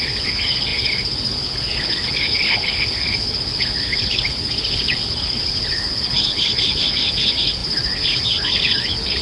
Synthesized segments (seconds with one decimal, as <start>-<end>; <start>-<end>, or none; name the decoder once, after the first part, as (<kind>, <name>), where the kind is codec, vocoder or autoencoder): 0.0-9.2 (codec, HILCodec)